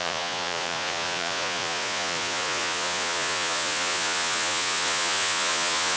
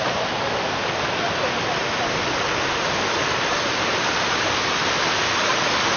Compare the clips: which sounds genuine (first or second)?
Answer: second